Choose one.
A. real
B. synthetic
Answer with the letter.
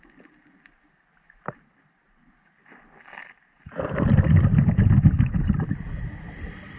A